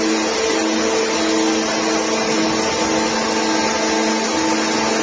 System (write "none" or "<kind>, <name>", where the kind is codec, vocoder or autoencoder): none